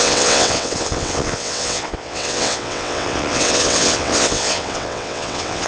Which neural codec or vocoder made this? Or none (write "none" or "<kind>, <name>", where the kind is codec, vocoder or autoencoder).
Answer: vocoder, WaveNeXt